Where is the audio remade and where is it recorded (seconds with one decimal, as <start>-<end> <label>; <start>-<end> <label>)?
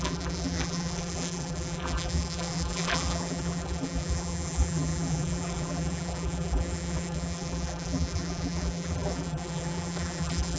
0.0-10.6 remade